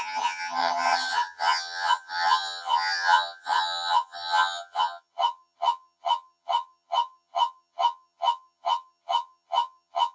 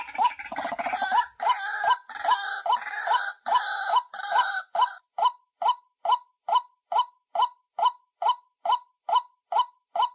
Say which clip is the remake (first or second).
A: first